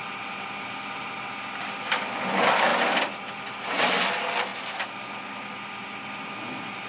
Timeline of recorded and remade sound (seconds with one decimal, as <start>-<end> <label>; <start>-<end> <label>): 0.0-6.9 recorded